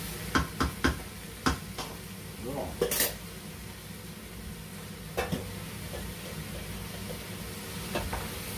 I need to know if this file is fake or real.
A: real